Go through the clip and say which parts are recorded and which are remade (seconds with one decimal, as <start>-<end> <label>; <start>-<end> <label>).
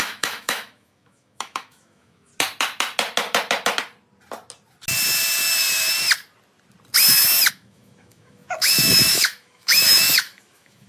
0.0-2.3 remade; 2.3-7.5 recorded; 7.5-10.9 remade